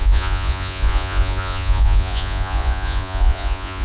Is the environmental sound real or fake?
fake